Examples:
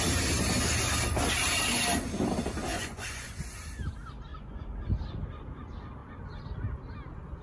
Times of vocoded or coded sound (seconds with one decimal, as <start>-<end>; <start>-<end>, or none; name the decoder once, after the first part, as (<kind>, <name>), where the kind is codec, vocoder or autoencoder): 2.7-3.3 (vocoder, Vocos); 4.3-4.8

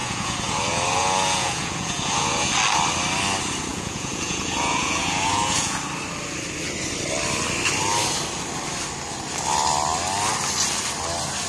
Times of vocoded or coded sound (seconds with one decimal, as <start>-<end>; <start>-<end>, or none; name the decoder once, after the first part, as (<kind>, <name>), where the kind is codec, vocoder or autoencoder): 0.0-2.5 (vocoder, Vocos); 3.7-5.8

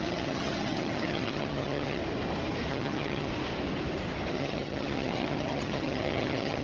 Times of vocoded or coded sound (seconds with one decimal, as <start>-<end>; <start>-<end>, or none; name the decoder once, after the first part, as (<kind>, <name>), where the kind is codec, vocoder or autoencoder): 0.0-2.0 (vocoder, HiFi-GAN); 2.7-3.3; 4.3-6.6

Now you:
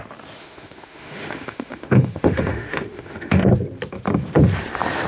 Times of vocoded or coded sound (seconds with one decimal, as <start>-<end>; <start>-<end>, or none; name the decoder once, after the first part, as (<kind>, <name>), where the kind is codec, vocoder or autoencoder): 0.4-3.5 (autoencoder, DAC-VAE)

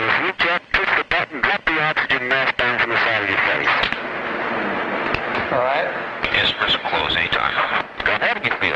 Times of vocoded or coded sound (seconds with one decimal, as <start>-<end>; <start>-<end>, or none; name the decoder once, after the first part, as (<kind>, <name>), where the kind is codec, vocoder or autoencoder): none